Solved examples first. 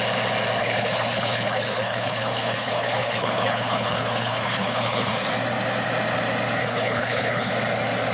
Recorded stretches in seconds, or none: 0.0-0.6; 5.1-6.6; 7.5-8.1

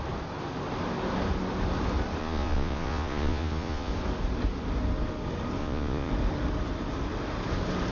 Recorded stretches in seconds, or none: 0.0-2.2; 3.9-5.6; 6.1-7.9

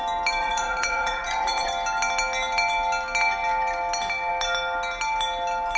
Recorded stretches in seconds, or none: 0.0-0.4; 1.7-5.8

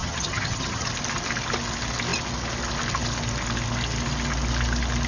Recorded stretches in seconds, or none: 0.9-5.1